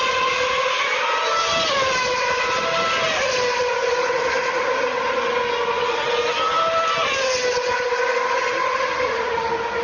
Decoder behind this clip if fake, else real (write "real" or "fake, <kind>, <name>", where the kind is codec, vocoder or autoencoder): real